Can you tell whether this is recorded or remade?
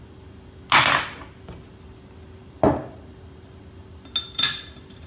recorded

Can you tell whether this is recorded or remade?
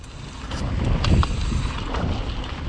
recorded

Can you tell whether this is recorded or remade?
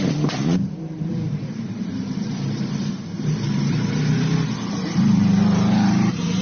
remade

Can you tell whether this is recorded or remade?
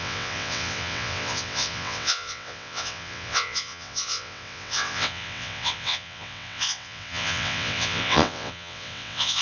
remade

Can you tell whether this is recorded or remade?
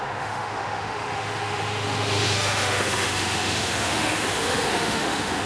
remade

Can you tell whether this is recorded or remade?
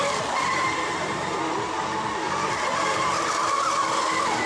recorded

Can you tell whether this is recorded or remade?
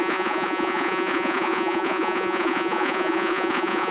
remade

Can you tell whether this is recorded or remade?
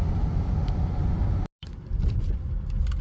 recorded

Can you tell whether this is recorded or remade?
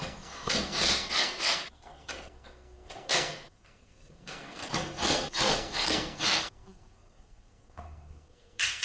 remade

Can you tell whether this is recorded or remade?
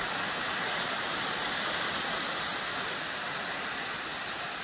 recorded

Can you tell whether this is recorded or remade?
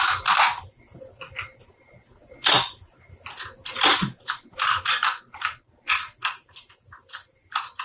recorded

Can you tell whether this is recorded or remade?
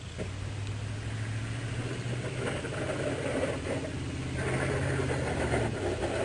recorded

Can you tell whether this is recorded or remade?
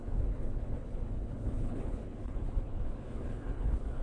remade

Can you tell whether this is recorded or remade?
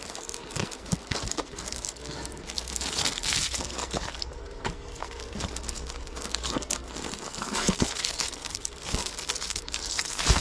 remade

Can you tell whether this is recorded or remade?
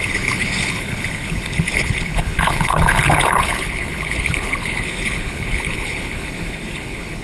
remade